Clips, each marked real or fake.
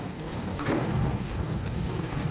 fake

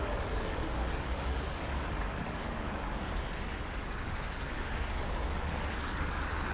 fake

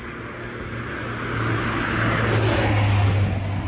real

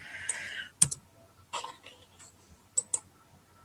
real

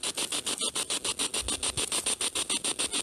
real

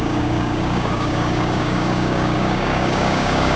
fake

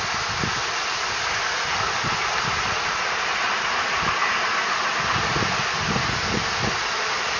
real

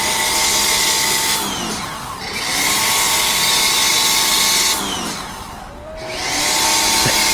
real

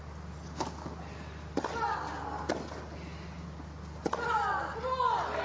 real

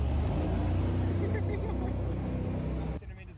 real